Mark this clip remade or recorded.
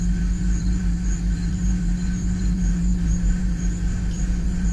remade